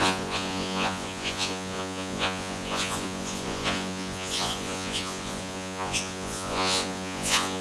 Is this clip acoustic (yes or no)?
no